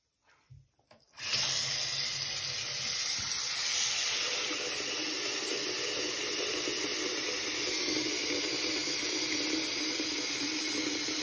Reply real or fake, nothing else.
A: real